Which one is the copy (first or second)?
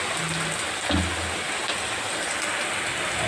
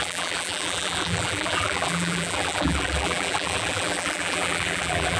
second